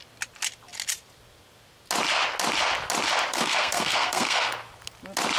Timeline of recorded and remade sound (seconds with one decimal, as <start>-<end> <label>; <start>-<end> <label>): 0.0-3.3 recorded; 3.3-4.5 remade; 4.5-5.4 recorded